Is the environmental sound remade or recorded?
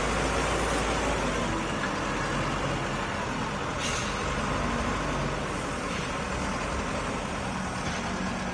recorded